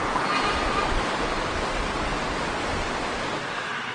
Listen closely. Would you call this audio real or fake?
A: real